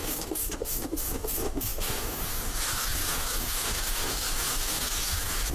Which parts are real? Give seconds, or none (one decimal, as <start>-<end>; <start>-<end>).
none